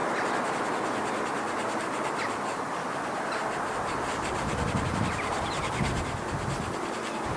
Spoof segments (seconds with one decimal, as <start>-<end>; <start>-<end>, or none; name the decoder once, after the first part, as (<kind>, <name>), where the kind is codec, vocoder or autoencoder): none